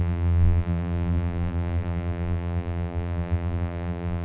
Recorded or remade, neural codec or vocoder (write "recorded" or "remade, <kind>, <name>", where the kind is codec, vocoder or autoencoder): remade, vocoder, BigVGAN v2